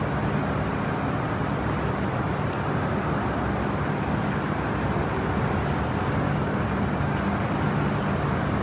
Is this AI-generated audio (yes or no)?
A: no